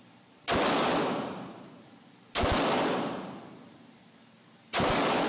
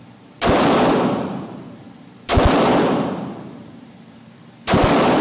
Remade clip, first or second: second